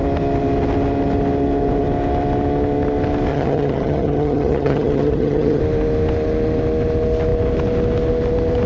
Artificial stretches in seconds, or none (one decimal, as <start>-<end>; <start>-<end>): 3.3-5.6